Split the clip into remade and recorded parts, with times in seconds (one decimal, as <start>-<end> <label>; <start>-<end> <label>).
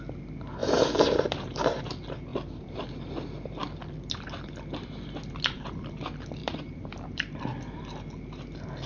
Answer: 0.0-0.6 recorded; 0.6-1.8 remade; 1.8-2.3 recorded; 2.3-2.8 remade; 2.8-6.4 recorded; 6.4-7.4 remade; 7.4-8.9 recorded